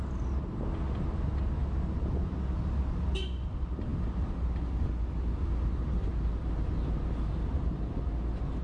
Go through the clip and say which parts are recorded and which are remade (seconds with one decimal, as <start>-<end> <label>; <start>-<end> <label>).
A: 0.0-8.6 recorded